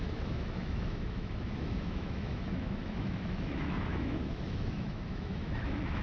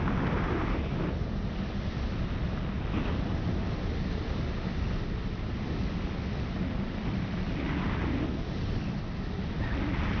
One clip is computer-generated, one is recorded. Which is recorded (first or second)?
second